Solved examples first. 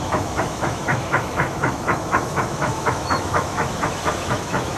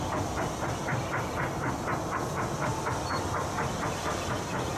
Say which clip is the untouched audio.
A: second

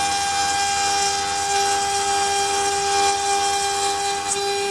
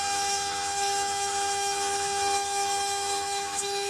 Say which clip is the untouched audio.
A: first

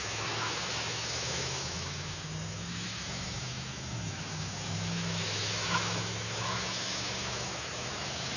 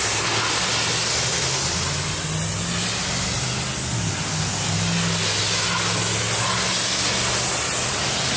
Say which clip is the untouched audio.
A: second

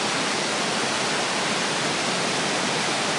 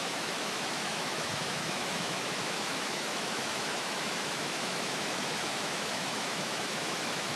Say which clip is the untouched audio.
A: first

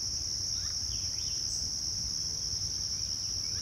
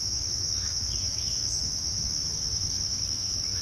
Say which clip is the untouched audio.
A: first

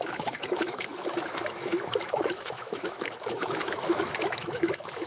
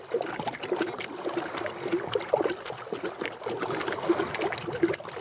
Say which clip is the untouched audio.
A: second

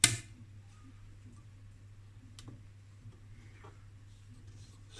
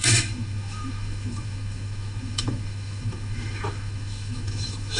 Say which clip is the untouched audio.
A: first